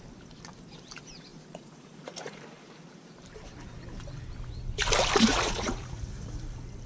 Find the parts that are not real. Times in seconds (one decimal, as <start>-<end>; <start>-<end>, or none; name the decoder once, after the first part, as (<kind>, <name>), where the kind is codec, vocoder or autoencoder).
1.3-2.4 (vocoder, Vocos); 5.3-6.4